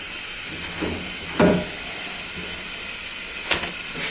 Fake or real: real